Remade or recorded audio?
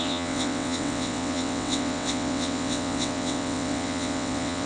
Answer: remade